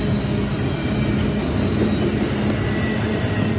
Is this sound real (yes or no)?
yes